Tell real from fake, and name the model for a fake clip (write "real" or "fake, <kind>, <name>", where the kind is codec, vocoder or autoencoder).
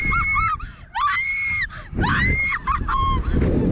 fake, vocoder, BigVGAN v2